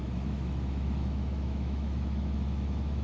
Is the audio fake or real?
fake